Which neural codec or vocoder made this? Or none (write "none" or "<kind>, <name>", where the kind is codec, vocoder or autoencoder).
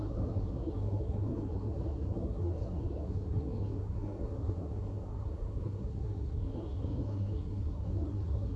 codec, SNAC